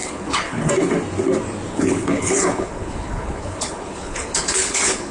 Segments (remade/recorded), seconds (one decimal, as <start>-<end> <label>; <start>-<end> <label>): 0.0-0.7 remade; 0.7-1.7 recorded; 1.7-5.1 remade